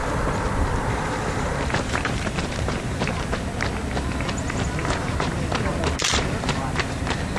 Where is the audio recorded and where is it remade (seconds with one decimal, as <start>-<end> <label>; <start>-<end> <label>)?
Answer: 0.0-3.4 remade; 3.4-4.8 recorded; 4.8-7.0 remade; 7.0-7.4 recorded